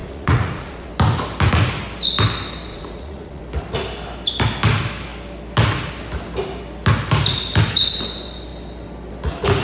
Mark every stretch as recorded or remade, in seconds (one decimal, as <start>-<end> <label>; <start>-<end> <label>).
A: 0.0-0.9 remade; 0.9-2.7 recorded; 2.7-3.4 remade; 3.4-9.6 recorded